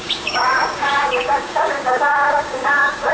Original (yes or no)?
no